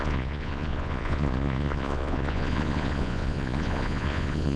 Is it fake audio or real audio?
fake